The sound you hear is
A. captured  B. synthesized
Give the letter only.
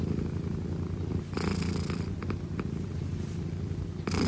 A